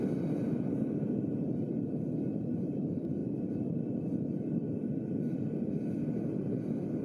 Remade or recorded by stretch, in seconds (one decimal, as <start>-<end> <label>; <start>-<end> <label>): 0.0-7.0 recorded